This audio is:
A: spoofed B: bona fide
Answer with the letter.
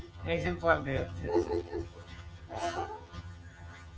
A